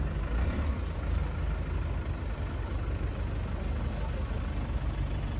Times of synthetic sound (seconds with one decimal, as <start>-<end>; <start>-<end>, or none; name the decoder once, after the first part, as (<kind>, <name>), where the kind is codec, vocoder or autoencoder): none